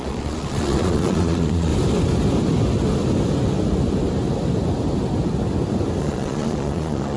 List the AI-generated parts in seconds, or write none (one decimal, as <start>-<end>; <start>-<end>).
0.0-1.7; 6.0-7.2